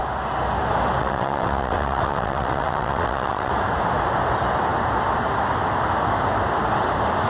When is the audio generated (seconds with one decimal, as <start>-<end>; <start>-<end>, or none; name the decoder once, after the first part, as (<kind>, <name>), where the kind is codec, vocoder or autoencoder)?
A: 1.0-3.5 (vocoder, WaveNeXt)